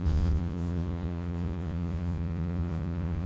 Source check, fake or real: fake